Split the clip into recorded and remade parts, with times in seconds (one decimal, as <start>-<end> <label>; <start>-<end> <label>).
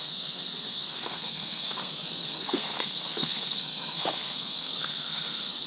0.0-5.7 remade